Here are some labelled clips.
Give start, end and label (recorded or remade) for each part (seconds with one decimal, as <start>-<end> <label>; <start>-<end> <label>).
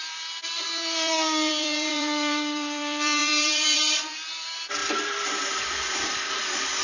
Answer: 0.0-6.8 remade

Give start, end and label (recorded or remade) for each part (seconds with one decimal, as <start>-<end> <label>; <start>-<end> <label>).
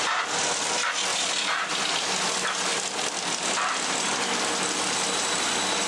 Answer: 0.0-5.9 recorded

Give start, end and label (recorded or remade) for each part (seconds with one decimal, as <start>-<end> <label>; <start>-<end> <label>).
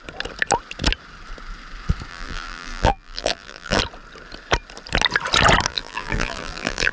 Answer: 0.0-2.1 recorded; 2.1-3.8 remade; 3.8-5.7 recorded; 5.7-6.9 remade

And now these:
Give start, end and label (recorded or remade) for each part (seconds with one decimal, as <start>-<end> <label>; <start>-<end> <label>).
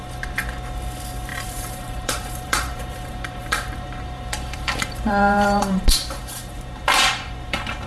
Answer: 0.0-1.3 recorded; 1.3-5.8 remade; 5.8-6.2 recorded; 6.2-7.9 remade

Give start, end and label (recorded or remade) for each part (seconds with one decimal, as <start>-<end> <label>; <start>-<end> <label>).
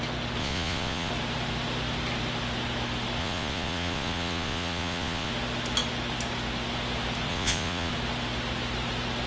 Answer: 0.0-0.4 recorded; 0.4-1.1 remade; 1.1-3.2 recorded; 3.2-5.3 remade; 5.3-7.3 recorded; 7.3-7.9 remade; 7.9-9.3 recorded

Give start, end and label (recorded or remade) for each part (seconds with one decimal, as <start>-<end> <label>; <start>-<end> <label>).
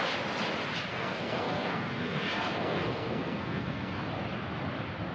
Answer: 0.0-0.9 recorded; 0.9-4.0 remade; 4.0-5.1 recorded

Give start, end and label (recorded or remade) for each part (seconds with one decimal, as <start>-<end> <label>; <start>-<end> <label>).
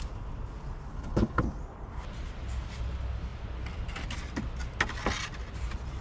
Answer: 0.0-0.9 recorded; 0.9-1.4 remade; 1.4-6.0 recorded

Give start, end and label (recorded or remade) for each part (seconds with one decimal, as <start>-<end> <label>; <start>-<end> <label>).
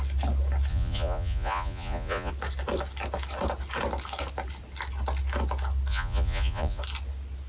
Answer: 0.0-0.7 recorded; 0.7-2.3 remade; 2.3-5.9 recorded; 5.9-6.8 remade; 6.8-7.5 recorded